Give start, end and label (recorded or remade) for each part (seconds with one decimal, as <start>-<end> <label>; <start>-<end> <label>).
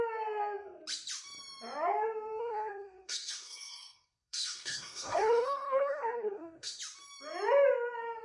0.0-2.4 recorded; 2.4-6.8 remade; 6.8-8.2 recorded